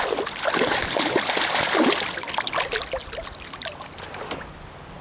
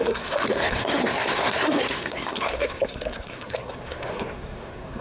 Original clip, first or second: first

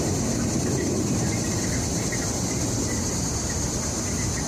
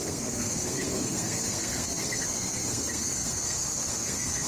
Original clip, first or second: first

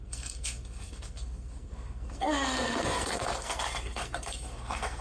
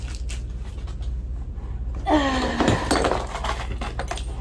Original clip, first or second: second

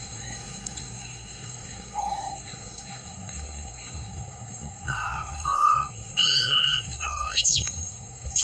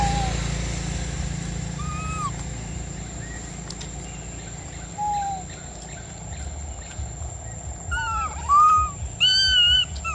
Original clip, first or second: second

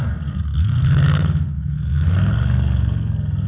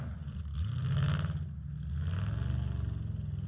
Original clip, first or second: second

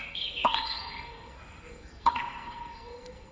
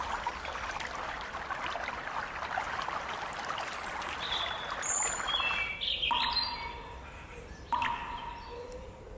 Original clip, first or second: second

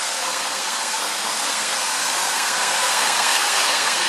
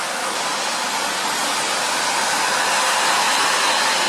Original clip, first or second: second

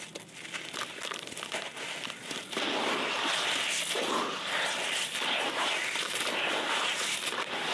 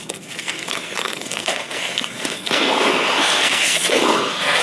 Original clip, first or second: first